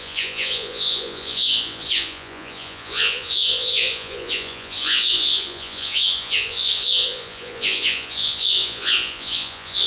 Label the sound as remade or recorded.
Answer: remade